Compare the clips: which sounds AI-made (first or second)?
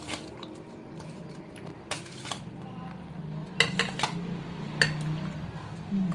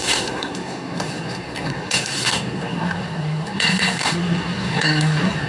second